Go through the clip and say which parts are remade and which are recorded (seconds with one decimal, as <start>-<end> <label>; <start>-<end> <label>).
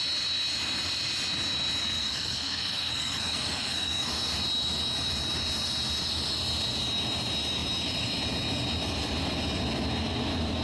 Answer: 0.0-1.8 recorded; 1.8-4.1 remade; 4.1-10.6 recorded